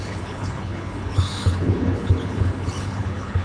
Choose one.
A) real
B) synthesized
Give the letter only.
B